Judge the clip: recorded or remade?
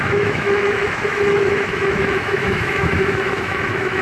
remade